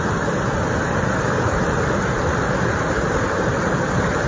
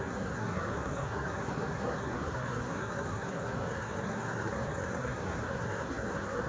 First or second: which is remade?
second